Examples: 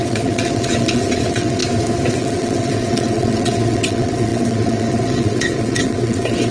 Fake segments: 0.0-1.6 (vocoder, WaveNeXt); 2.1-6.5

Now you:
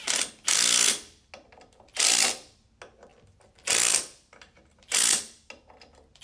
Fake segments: none

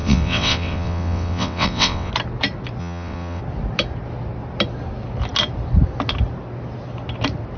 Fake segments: 0.0-2.1 (vocoder, WaveNeXt); 2.8-3.4

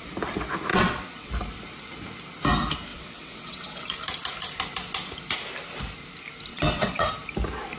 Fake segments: 0.7-1.3 (vocoder, WaveNeXt); 2.9-3.8; 6.5-7.1

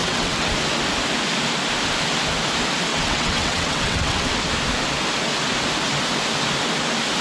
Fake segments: 0.0-0.5 (vocoder, WaveNeXt); 2.9-4.3

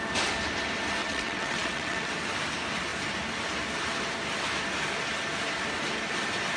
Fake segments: 1.0-2.1 (vocoder, WaveNeXt)

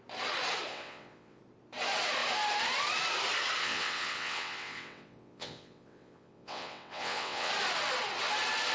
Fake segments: 0.7-1.4 (vocoder, WaveNeXt); 3.6-7.5